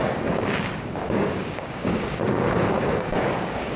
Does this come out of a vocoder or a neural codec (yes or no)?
yes